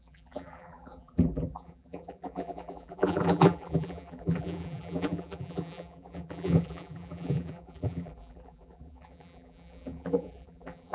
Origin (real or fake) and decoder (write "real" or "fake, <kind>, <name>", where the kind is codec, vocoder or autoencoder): fake, vocoder, BigVGAN v2